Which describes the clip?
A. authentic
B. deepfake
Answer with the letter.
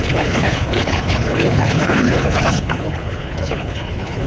B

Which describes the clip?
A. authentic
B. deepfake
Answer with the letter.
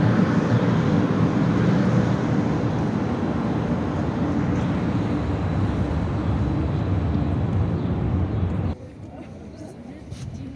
A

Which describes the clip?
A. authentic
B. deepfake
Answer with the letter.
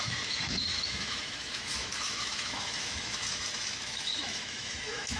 B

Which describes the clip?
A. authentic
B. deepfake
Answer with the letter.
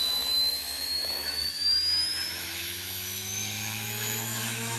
B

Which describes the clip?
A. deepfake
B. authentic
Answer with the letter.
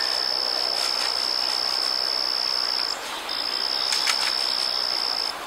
B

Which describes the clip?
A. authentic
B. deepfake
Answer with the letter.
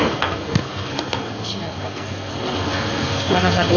B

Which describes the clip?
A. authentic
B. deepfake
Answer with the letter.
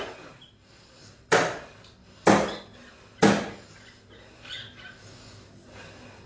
A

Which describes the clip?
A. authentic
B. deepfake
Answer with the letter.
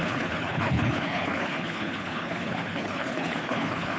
B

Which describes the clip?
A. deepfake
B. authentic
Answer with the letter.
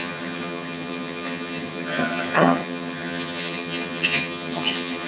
A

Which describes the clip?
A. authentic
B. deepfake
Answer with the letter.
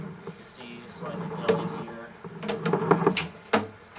A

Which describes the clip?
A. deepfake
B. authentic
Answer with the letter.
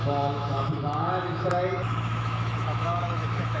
A